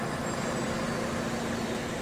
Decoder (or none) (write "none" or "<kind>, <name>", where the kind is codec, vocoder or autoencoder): none